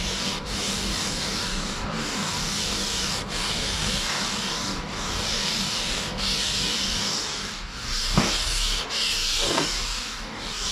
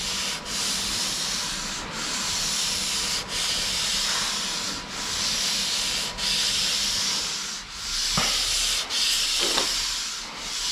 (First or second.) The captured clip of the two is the second